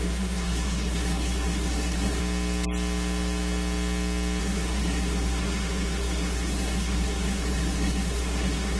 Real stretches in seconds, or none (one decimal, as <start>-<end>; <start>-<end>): 2.2-4.4